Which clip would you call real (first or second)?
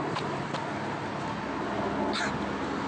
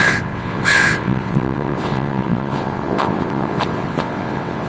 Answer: first